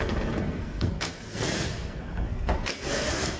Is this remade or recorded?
remade